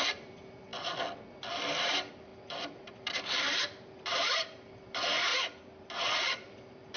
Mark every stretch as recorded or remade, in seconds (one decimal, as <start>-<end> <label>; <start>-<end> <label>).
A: 0.0-0.7 remade; 0.7-1.6 recorded; 1.6-5.3 remade; 5.3-5.9 recorded; 5.9-7.0 remade